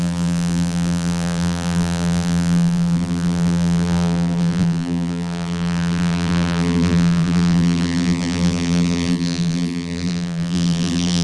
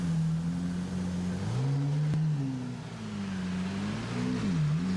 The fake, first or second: first